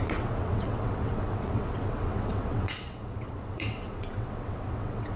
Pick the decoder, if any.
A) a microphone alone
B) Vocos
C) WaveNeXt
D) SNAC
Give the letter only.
C